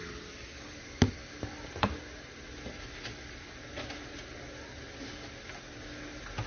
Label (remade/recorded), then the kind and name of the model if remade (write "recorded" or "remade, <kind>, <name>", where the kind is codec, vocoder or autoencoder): recorded